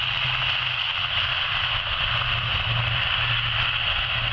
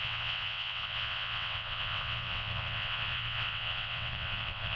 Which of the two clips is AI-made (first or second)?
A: second